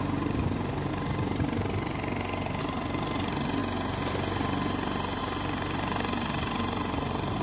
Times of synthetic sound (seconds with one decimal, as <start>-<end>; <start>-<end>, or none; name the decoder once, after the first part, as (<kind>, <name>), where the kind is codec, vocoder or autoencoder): 0.0-0.9 (vocoder, BigVGAN v2); 2.6-3.6; 5.2-7.4